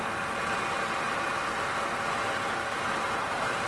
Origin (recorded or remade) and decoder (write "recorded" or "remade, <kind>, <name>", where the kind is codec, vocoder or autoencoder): recorded